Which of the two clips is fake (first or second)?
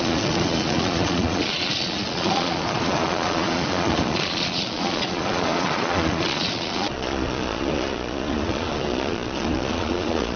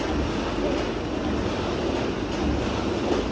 first